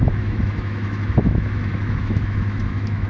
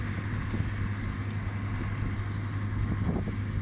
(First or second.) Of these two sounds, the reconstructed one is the first